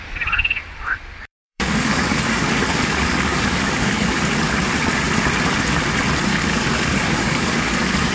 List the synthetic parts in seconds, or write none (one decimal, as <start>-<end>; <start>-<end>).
1.1-4.5; 6.3-8.1